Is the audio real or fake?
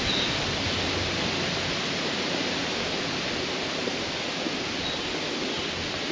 real